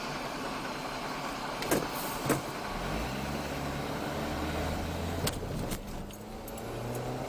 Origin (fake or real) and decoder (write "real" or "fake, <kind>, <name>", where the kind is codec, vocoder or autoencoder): real